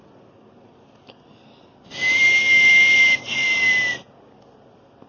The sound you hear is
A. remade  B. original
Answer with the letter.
B